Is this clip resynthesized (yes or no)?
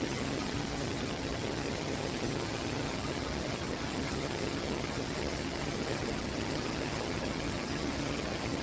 yes